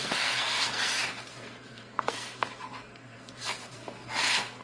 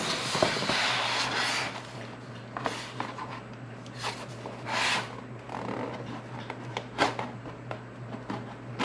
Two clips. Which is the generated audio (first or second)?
first